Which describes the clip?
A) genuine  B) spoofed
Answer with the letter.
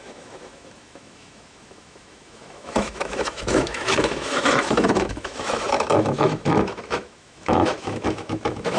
B